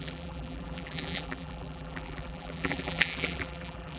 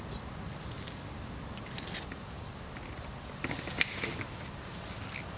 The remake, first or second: first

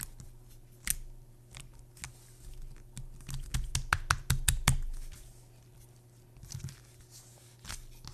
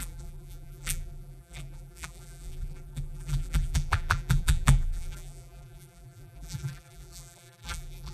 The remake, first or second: second